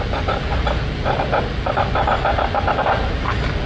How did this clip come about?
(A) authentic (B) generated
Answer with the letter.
A